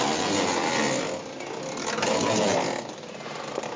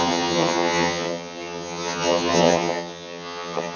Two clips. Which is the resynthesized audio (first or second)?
second